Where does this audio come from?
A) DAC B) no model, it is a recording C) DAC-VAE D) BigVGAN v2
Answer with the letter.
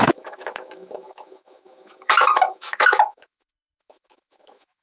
C